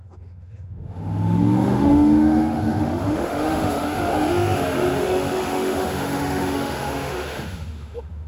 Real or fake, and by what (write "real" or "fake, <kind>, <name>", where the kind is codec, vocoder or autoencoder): fake, autoencoder, DAC-VAE